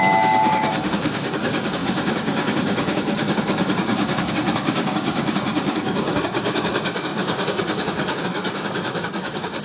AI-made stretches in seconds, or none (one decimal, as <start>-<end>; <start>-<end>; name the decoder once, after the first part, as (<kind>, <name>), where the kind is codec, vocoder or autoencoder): 0.0-9.6 (codec, DAC)